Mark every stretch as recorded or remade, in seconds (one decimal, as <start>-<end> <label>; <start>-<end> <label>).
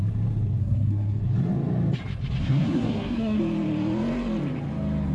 0.0-0.6 recorded; 0.6-1.2 remade; 1.2-2.4 recorded; 2.4-3.4 remade; 3.4-5.1 recorded